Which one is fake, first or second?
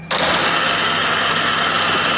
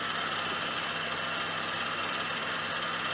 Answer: second